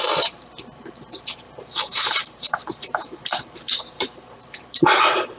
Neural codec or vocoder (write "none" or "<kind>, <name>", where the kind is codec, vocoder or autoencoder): vocoder, BigVGAN v2